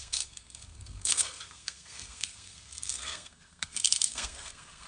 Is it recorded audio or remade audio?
remade